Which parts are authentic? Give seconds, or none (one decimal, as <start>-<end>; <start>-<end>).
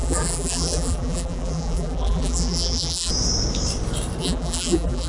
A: 3.1-4.2